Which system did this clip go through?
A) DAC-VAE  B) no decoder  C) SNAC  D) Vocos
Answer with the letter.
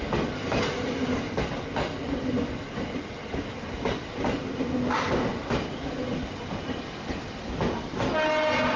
B